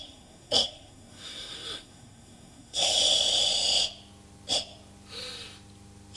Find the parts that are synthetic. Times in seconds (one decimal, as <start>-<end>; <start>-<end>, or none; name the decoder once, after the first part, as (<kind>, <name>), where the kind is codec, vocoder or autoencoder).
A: 0.0-2.9 (codec, SNAC)